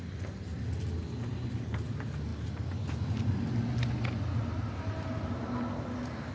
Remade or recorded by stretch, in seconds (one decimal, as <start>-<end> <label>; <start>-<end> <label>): 0.0-6.3 recorded